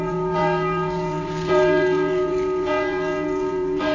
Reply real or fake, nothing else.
fake